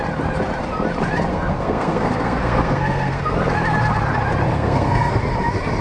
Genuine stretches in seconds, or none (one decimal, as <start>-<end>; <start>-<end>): 0.0-1.3; 3.2-4.5; 5.2-5.8